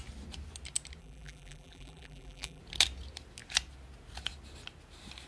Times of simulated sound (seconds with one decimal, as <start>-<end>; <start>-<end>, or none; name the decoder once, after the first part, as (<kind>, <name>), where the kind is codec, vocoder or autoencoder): 1.0-2.6 (vocoder, BigVGAN v2)